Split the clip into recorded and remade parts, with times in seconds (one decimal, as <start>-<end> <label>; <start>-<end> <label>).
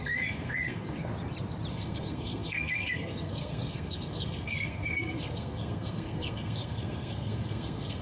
0.0-1.1 remade; 1.1-1.7 recorded; 1.7-8.0 remade